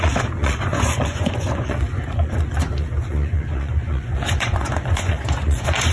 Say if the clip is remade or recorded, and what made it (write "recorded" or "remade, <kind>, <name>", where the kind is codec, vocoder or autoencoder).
remade, vocoder, Vocos